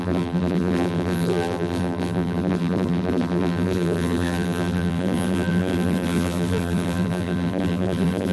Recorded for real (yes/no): no